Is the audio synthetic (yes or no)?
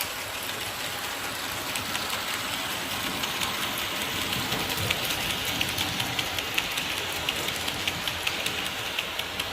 no